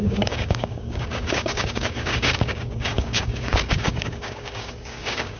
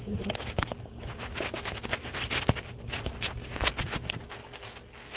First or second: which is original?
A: second